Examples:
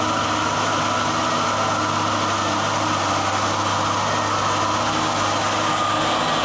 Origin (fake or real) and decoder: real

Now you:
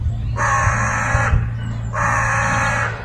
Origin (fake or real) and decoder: real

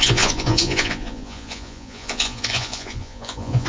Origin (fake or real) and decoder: fake, vocoder, Vocos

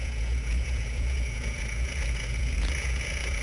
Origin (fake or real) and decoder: fake, vocoder, Vocos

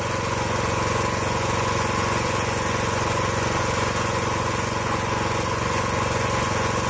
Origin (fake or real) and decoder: fake, vocoder, Vocos